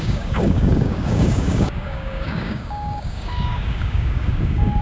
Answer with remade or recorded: remade